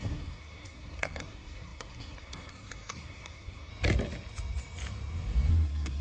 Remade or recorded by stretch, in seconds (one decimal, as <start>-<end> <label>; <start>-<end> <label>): 0.0-3.7 remade; 3.7-5.5 recorded; 5.5-6.0 remade